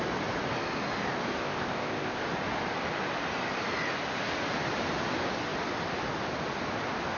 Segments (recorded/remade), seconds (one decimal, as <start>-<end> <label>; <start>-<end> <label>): 0.0-1.4 recorded; 1.4-2.2 remade; 2.2-7.2 recorded